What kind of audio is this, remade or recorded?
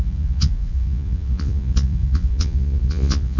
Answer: remade